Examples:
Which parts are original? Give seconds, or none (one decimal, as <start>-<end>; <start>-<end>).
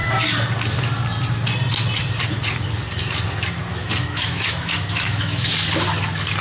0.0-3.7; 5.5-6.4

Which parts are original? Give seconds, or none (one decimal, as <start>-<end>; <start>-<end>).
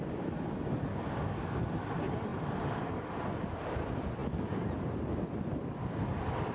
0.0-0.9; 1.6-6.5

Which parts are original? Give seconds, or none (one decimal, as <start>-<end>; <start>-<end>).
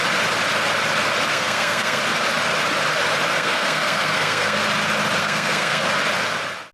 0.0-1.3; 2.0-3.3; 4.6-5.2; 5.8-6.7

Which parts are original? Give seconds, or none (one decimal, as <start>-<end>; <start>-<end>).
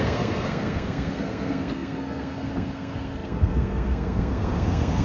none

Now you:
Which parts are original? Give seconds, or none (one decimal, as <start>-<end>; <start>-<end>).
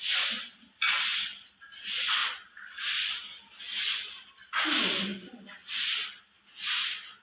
0.0-7.2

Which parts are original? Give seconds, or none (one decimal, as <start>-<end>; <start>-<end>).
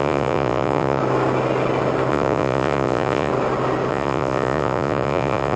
1.0-2.1; 3.3-3.9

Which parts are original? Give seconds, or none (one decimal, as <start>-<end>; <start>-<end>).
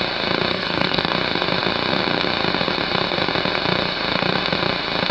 0.0-0.5; 1.1-5.1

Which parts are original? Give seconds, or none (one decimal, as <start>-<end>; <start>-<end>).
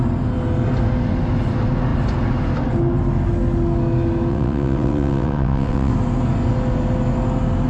0.0-4.3; 5.9-7.7